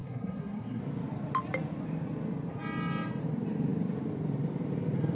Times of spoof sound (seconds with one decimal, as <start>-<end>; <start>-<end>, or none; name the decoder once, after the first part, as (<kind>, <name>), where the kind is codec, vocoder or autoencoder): 0.0-0.8 (codec, SNAC)